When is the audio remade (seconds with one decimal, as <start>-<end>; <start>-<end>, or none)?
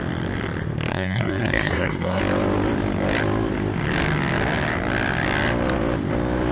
0.9-2.2